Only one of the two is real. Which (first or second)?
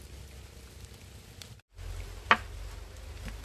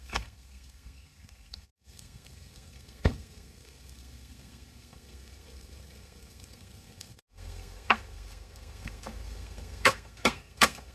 first